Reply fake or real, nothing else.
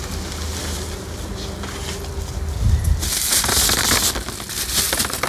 real